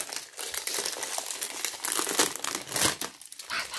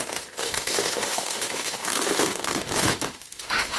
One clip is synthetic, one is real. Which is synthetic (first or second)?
second